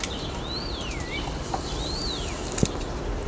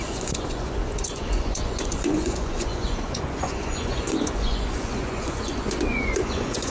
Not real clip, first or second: second